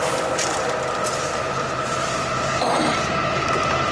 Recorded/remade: recorded